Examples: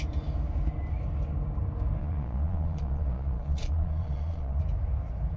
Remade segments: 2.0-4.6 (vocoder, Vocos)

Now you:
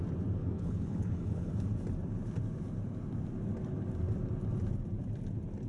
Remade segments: 0.4-1.5 (codec, HILCodec)

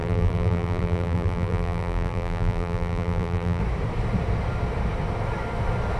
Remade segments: 0.0-3.6 (vocoder, BigVGAN v2)

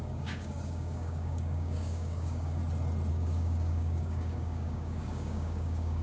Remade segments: 0.0-2.6 (codec, DAC); 3.1-6.0

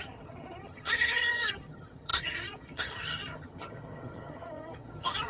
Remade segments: 0.0-5.3 (vocoder, HiFi-GAN)

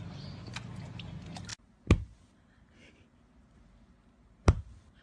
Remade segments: none